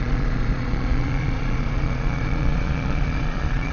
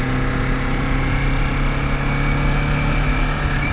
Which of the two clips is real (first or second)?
second